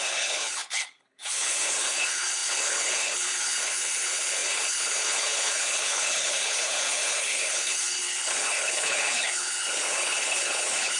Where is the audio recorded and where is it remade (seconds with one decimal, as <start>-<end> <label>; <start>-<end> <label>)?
0.0-11.0 remade